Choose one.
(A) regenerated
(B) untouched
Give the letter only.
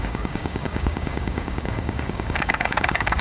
A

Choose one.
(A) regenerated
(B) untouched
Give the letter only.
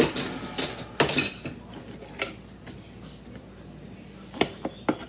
B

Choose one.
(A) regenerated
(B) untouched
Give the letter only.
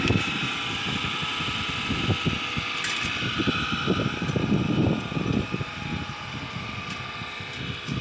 B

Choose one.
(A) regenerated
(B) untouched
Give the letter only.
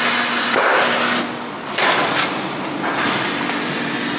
B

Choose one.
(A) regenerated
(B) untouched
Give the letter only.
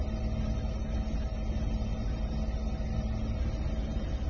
B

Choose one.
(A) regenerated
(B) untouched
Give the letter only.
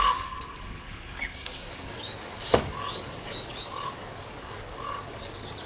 A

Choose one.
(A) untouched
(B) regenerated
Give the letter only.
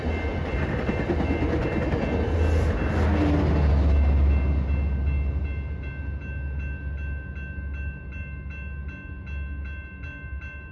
A